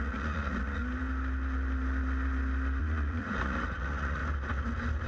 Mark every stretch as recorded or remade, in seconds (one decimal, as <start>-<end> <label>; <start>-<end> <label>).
0.0-0.8 remade; 0.8-2.8 recorded; 2.8-4.2 remade; 4.2-5.1 recorded

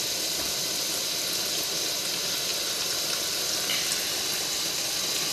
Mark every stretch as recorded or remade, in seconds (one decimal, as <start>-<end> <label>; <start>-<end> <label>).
0.0-5.3 recorded